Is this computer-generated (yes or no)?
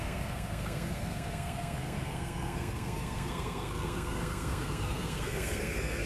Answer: yes